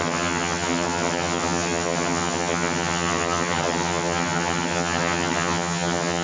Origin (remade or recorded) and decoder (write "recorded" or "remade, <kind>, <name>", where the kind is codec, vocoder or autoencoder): remade, vocoder, HiFi-GAN